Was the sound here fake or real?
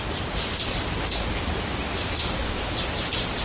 real